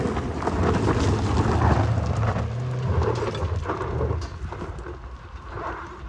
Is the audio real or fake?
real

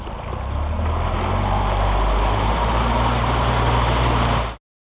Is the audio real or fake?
real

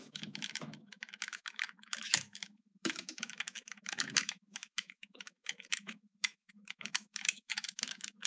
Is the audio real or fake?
fake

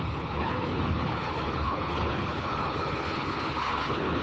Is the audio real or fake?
fake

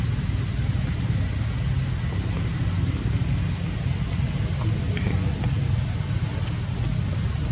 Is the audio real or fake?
real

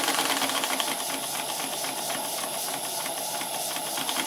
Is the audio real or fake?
real